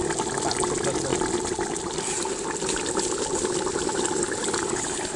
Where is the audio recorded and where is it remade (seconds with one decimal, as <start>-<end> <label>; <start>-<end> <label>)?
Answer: 0.0-5.2 recorded